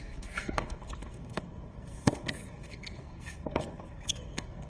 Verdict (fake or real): fake